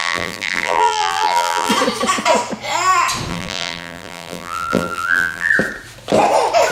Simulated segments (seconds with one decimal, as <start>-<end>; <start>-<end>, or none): 0.0-1.7; 3.3-5.5